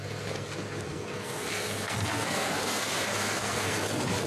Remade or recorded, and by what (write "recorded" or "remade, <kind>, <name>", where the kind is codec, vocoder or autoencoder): remade, codec, SNAC